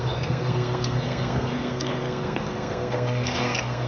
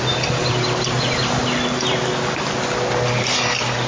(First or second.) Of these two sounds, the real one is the second